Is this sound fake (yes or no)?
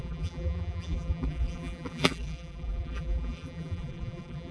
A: yes